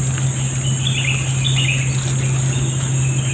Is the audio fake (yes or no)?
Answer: no